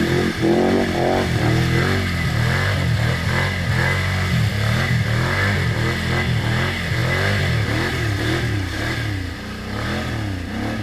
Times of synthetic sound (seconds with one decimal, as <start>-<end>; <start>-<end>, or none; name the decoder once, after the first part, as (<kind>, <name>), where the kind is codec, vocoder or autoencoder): none